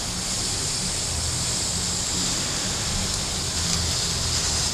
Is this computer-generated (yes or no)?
no